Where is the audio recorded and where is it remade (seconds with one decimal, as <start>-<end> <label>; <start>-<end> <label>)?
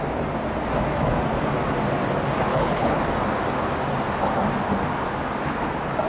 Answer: 0.0-2.5 recorded; 2.5-3.0 remade; 3.0-6.1 recorded